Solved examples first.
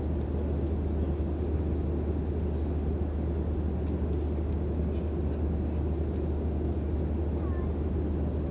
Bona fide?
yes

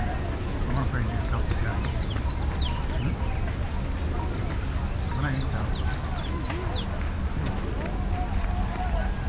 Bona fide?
yes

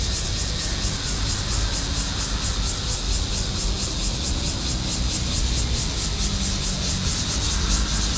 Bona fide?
yes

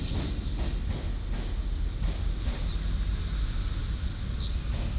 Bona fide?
yes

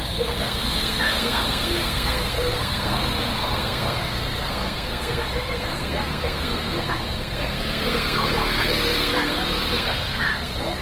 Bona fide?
no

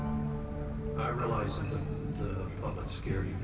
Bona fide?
yes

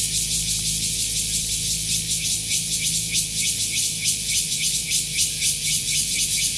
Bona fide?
yes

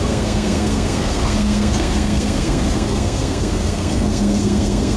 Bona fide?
no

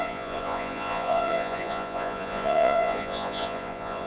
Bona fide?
no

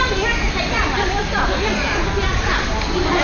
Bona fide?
yes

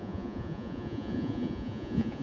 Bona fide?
no